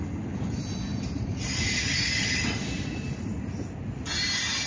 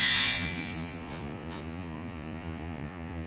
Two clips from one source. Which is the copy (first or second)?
second